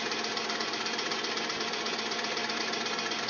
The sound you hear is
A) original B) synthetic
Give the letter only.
A